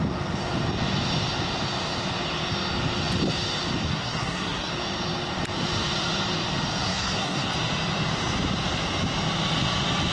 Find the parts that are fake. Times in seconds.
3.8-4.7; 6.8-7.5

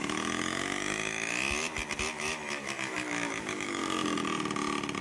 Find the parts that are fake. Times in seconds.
0.0-1.3; 2.1-3.8

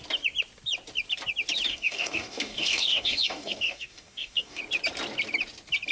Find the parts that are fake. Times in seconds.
1.7-4.6

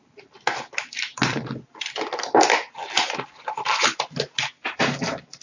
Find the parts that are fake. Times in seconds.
none